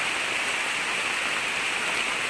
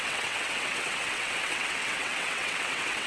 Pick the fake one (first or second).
second